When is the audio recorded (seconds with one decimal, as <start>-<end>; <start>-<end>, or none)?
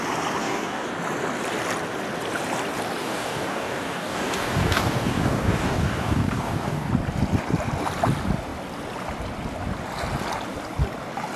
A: 0.0-0.4; 0.9-3.0; 6.9-11.4